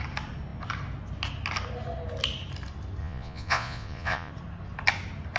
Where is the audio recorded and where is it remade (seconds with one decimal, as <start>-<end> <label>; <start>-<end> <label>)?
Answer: 0.0-3.0 recorded; 3.0-4.3 remade; 4.3-5.4 recorded